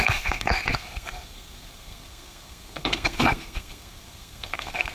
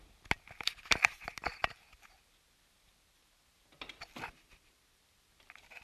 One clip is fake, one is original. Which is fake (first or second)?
first